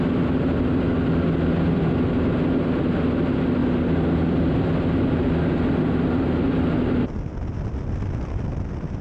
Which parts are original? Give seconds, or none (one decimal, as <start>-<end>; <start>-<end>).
0.0-9.0